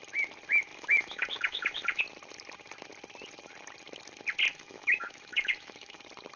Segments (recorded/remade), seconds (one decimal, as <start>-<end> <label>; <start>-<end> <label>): 0.0-0.7 recorded; 0.7-2.0 remade; 2.0-4.5 recorded; 4.5-6.0 remade; 6.0-6.4 recorded